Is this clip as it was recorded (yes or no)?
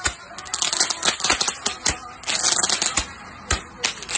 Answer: yes